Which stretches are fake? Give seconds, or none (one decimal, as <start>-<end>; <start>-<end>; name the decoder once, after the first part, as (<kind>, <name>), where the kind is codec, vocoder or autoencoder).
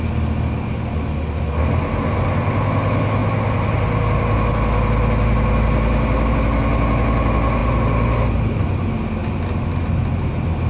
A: none